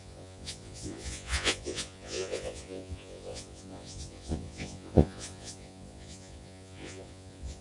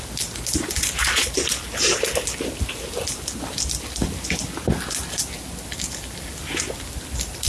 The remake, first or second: first